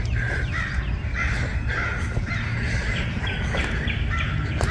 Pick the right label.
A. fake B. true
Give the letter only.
B